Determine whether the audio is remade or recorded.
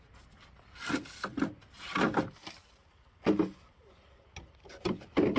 recorded